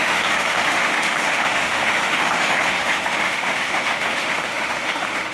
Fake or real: fake